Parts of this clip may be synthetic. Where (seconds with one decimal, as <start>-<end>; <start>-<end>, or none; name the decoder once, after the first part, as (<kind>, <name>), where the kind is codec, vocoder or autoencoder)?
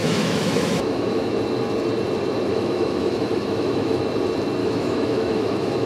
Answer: 0.0-1.4 (autoencoder, DAC-VAE); 2.5-4.0; 4.6-5.9